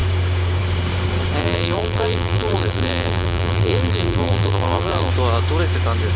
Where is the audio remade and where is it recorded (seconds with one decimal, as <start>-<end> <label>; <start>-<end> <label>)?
0.0-1.4 recorded; 1.4-5.1 remade; 5.1-6.2 recorded